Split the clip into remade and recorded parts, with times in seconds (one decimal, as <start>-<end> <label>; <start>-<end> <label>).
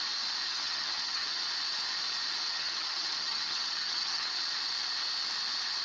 0.0-0.5 recorded; 0.5-1.4 remade; 1.4-2.5 recorded; 2.5-4.4 remade; 4.4-5.8 recorded